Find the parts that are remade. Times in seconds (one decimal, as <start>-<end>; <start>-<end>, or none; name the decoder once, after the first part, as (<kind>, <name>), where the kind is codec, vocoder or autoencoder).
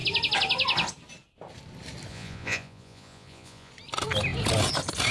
2.1-3.7 (vocoder, Vocos)